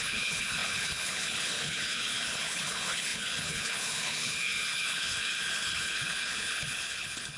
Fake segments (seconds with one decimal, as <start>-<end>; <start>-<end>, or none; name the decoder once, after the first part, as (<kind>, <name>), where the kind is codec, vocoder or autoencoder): 0.0-7.4 (codec, HILCodec)